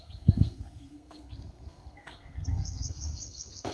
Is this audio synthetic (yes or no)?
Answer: yes